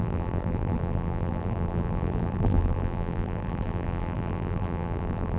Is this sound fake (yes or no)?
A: yes